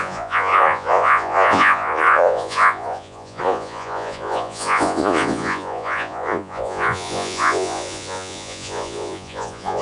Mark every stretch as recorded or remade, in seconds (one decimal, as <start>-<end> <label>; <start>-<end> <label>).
0.0-9.8 remade